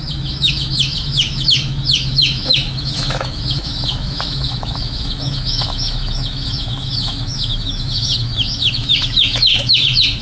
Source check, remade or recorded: remade